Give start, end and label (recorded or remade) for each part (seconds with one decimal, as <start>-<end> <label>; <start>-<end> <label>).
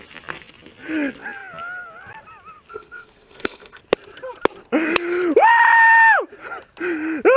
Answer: 0.0-2.7 recorded; 2.7-3.8 remade; 3.8-7.4 recorded